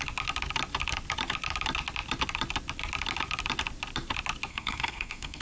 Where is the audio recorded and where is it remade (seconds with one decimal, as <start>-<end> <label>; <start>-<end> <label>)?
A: 0.0-4.5 recorded; 4.5-5.4 remade